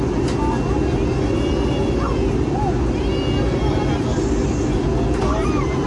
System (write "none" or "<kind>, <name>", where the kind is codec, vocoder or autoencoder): none